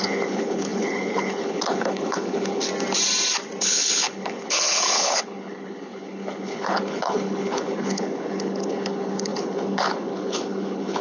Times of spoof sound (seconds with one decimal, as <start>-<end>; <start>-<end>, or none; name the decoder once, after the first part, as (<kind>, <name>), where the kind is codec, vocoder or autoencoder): 0.0-2.6 (codec, HILCodec); 3.6-11.0